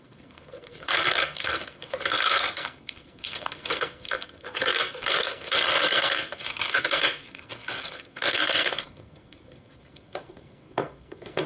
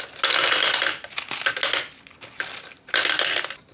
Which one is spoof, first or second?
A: first